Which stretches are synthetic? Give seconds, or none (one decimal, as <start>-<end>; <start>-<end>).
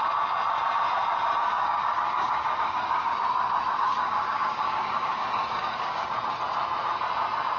1.5-3.0; 3.8-6.1